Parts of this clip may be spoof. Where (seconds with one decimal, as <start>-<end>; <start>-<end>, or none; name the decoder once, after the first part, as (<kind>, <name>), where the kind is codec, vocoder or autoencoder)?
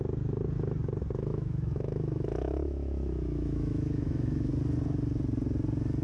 1.3-4.5 (autoencoder, DAC-VAE)